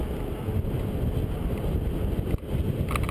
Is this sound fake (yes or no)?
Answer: no